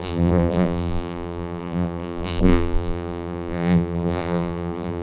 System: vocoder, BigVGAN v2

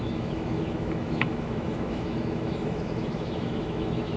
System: autoencoder, DAC-VAE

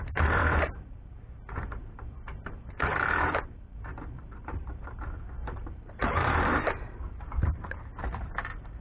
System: vocoder, BigVGAN v2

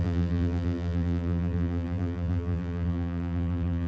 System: vocoder, BigVGAN v2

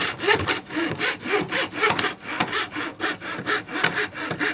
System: none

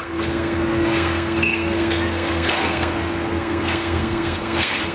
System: codec, SNAC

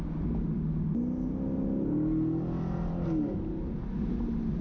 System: none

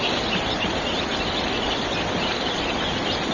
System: none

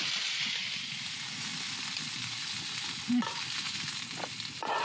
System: none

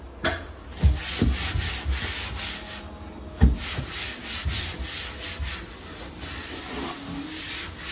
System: none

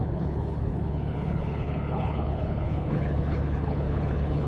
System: codec, HILCodec